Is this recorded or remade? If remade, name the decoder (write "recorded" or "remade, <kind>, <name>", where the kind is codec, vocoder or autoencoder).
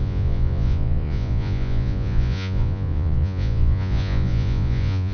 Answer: remade, vocoder, Vocos